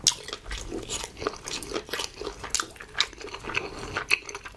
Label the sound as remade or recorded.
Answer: recorded